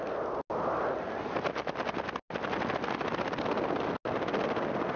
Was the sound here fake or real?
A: real